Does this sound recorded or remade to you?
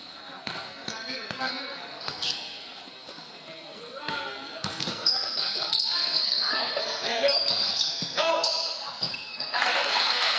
remade